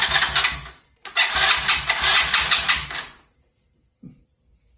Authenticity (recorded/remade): recorded